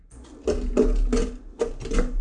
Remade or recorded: recorded